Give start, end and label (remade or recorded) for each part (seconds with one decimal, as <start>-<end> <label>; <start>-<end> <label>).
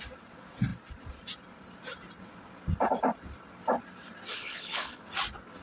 0.0-4.3 recorded; 4.3-5.0 remade; 5.0-5.6 recorded